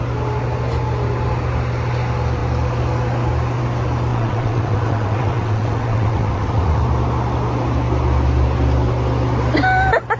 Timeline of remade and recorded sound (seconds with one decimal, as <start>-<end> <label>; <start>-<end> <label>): 0.0-4.1 recorded; 4.1-6.8 remade; 6.8-10.2 recorded